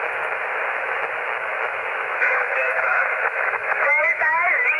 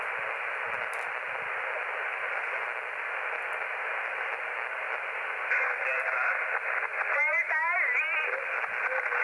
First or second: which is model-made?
first